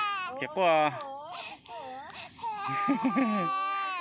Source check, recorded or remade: recorded